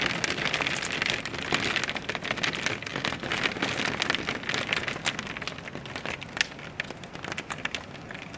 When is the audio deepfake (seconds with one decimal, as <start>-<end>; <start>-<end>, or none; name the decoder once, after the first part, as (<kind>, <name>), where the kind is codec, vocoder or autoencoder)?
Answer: none